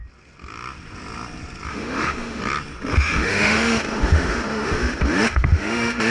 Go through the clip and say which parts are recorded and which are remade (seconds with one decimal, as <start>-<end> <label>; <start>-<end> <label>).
0.0-1.7 recorded; 1.7-2.4 remade; 2.4-2.9 recorded; 2.9-6.1 remade